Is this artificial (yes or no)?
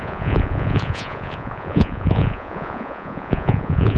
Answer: yes